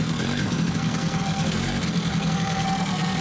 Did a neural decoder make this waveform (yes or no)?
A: yes